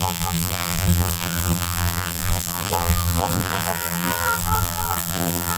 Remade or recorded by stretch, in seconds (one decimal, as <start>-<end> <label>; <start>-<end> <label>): 0.0-5.6 remade